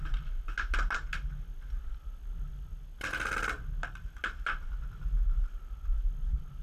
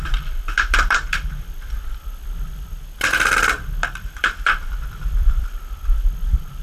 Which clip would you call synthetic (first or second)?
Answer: second